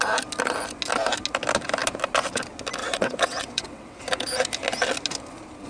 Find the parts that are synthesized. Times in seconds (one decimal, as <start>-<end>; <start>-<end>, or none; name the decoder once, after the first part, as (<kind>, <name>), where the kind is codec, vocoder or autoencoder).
2.8-4.0 (vocoder, WaveNeXt)